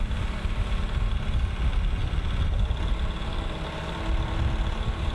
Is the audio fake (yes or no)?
no